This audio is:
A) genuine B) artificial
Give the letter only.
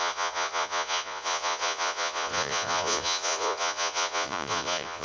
B